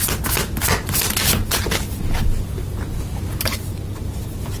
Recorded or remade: recorded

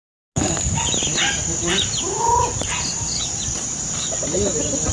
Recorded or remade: recorded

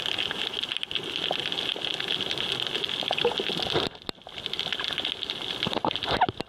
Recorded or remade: recorded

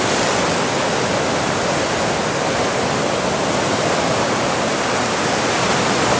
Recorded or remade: recorded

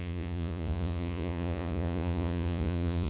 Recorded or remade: remade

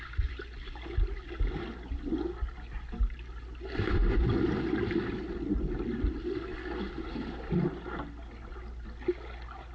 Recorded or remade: recorded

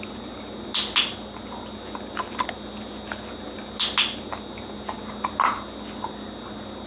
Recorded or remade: recorded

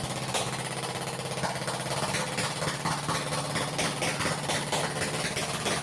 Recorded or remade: recorded